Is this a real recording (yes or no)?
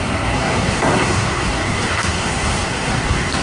no